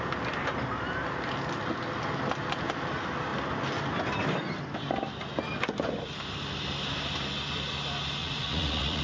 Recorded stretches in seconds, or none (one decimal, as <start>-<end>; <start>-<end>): 0.0-8.2